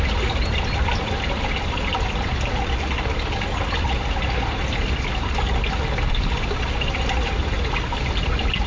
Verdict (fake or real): real